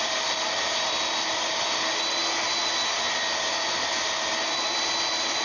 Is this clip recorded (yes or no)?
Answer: yes